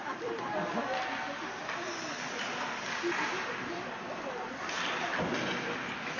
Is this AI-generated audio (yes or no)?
no